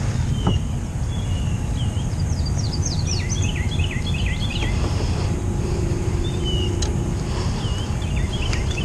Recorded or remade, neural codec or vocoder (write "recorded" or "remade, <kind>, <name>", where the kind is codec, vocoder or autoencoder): recorded